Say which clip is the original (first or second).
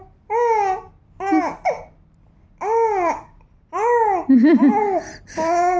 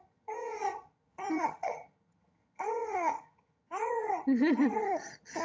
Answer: first